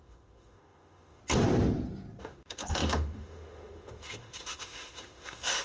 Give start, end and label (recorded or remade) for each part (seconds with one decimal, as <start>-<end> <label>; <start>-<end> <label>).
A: 0.0-1.2 remade; 1.2-2.2 recorded; 2.2-5.6 remade